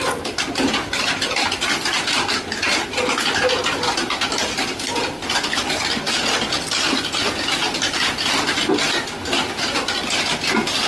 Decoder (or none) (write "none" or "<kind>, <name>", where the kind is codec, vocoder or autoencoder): none